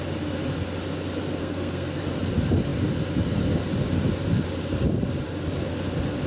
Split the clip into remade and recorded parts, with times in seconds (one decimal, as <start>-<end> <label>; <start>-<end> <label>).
0.0-1.4 recorded; 1.4-2.0 remade; 2.0-6.3 recorded